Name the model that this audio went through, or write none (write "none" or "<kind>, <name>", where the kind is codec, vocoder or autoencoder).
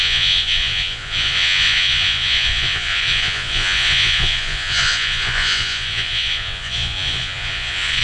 vocoder, Vocos